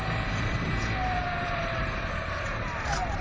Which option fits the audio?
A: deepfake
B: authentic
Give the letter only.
A